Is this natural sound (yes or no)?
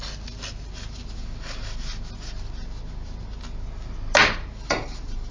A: yes